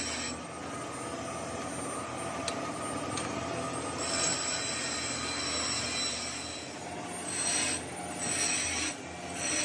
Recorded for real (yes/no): yes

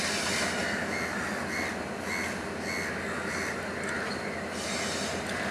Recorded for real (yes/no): yes